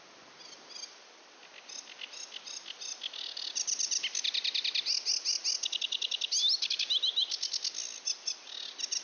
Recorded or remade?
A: recorded